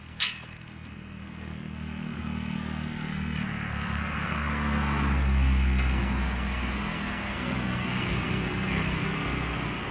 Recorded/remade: remade